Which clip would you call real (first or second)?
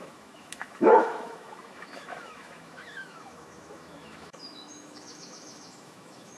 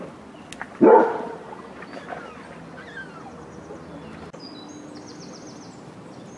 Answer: second